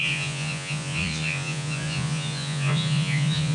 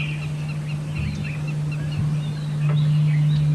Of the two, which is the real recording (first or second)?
second